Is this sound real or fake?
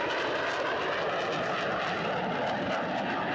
real